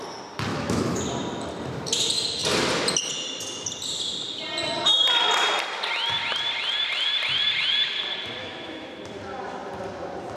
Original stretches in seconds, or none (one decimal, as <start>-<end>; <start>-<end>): 0.0-0.5; 1.0-8.4; 9.0-10.4